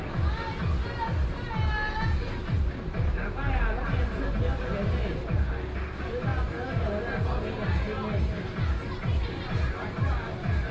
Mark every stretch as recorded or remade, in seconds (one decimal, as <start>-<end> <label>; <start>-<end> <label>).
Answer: 0.0-10.7 recorded

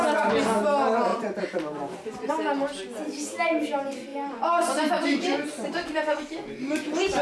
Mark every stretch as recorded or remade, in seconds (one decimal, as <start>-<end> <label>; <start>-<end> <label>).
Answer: 0.0-1.1 recorded; 1.1-2.3 remade; 2.3-4.1 recorded; 4.1-6.2 remade; 6.2-7.2 recorded

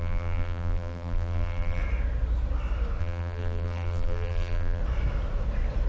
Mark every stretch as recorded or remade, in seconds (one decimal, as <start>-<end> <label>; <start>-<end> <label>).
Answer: 0.0-1.8 remade; 1.8-3.0 recorded; 3.0-4.8 remade; 4.8-5.9 recorded

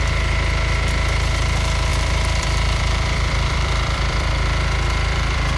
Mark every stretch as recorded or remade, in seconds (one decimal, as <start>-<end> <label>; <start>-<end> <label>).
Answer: 0.0-1.9 recorded; 1.9-5.6 remade

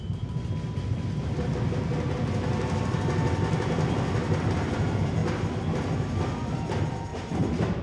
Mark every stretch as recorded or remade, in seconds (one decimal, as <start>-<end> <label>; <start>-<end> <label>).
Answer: 0.0-7.1 recorded; 7.1-7.8 remade

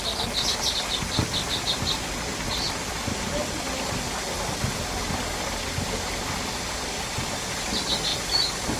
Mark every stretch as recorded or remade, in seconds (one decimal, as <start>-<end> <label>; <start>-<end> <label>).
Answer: 0.0-8.8 recorded

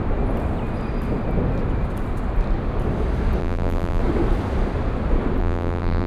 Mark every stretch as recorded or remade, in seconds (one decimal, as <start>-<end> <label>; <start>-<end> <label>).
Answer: 0.0-3.4 recorded; 3.4-4.0 remade; 4.0-5.4 recorded; 5.4-6.1 remade

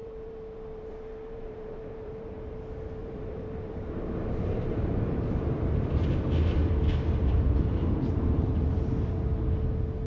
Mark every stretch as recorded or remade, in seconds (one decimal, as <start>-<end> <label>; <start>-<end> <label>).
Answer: 0.0-2.5 remade; 2.5-3.0 recorded; 3.0-6.1 remade; 6.1-7.2 recorded; 7.2-9.2 remade; 9.2-10.1 recorded